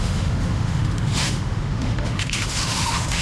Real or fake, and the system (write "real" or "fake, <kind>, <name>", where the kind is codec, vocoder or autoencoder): fake, autoencoder, DAC-VAE